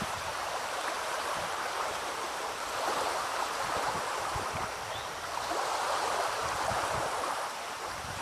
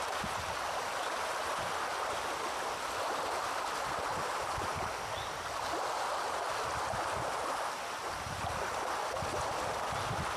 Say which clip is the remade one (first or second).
first